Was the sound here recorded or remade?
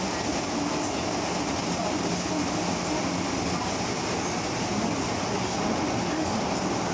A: recorded